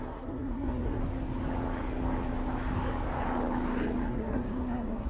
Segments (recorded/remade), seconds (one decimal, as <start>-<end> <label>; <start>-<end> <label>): 0.0-1.0 remade; 1.0-4.1 recorded; 4.1-5.1 remade

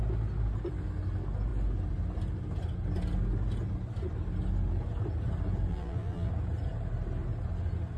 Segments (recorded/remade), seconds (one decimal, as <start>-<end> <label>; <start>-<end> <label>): 0.0-5.7 recorded; 5.7-6.3 remade; 6.3-8.0 recorded

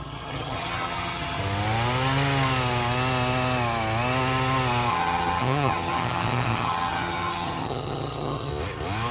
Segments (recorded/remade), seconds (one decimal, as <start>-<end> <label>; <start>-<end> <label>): 0.0-1.4 remade; 1.4-4.9 recorded; 4.9-8.5 remade; 8.5-9.1 recorded

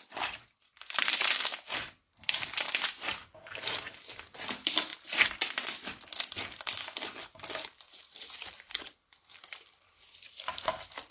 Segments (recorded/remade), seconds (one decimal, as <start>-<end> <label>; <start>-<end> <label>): 0.0-11.1 remade

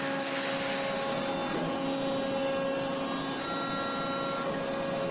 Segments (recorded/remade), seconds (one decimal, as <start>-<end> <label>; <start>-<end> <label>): 0.0-5.1 recorded

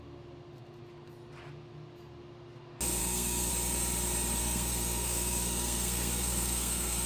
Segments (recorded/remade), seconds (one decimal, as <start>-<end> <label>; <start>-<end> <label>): 0.0-3.0 recorded; 3.0-3.5 remade; 3.5-4.4 recorded; 4.4-7.1 remade

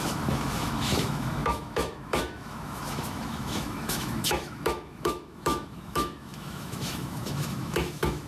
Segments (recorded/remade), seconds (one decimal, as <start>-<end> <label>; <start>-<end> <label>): 0.0-8.3 remade